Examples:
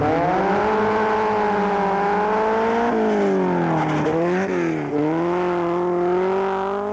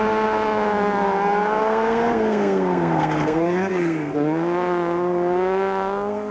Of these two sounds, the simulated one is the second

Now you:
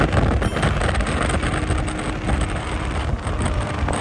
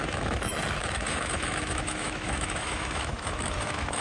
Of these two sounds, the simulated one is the second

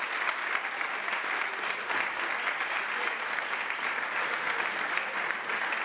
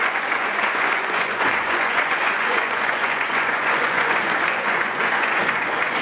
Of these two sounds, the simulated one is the second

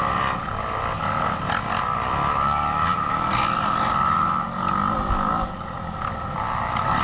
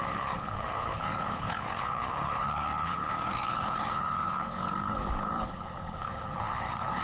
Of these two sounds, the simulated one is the second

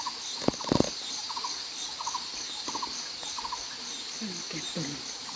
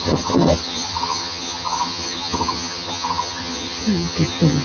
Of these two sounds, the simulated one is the second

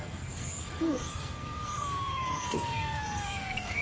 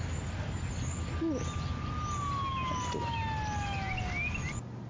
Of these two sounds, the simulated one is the first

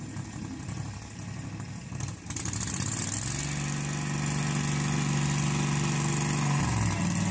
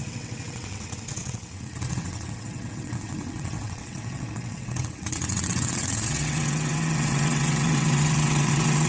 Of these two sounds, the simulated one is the second